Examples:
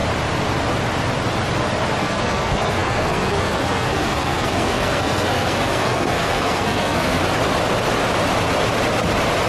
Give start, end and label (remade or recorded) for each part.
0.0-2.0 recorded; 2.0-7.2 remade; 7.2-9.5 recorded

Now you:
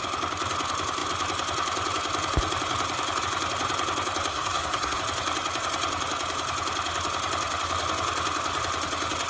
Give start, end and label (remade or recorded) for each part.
0.0-4.3 recorded; 4.3-5.0 remade; 5.0-9.3 recorded